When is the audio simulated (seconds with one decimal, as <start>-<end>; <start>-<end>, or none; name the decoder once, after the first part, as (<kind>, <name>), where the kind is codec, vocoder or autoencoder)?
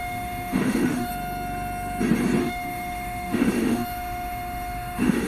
0.0-1.1 (autoencoder, DAC-VAE); 2.4-5.3